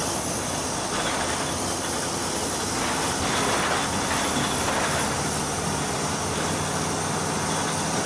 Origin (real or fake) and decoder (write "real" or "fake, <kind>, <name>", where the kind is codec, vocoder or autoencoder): real